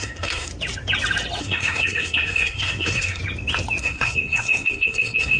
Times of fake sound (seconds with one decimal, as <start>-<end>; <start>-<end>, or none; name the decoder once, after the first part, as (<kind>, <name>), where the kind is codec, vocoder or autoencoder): 0.0-0.5 (codec, SNAC); 1.4-3.2; 3.8-5.4

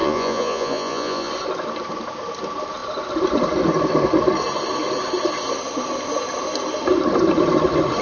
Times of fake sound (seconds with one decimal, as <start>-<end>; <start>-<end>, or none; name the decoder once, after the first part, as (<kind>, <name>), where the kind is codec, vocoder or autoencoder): 0.0-1.3 (vocoder, Vocos)

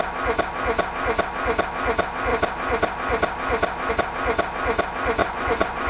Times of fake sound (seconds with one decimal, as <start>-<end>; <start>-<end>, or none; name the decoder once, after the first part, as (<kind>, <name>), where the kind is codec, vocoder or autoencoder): 5.2-5.9 (vocoder, Vocos)

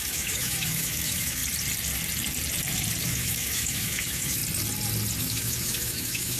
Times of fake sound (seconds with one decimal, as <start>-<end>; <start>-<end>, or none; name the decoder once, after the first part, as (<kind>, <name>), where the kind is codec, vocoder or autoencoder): 0.0-1.4 (autoencoder, DAC-VAE); 3.0-4.4; 5.2-6.4